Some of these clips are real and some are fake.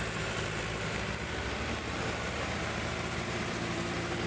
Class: fake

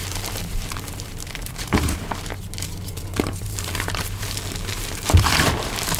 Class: fake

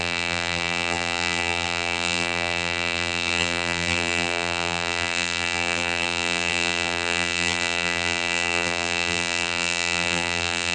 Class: fake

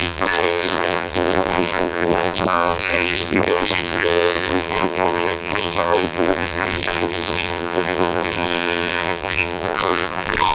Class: fake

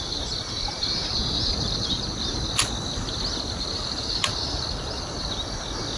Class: real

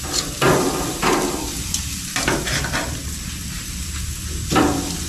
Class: fake